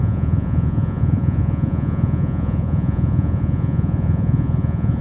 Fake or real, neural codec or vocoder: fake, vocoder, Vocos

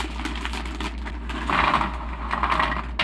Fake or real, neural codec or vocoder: real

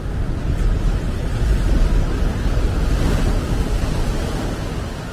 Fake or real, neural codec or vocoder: real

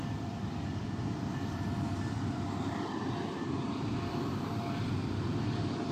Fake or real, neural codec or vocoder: fake, vocoder, BigVGAN v2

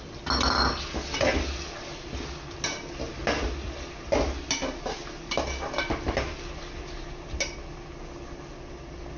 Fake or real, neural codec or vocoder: real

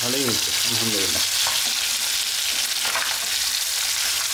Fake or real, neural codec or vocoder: real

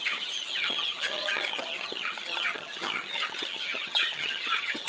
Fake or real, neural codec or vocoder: fake, vocoder, HiFi-GAN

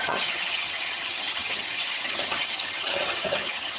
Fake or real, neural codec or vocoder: fake, vocoder, HiFi-GAN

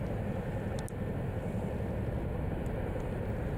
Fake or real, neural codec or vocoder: real